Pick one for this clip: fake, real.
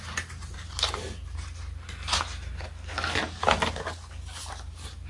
real